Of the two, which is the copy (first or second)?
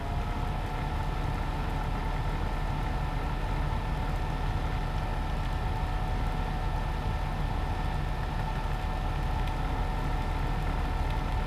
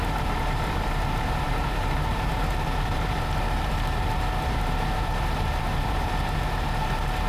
second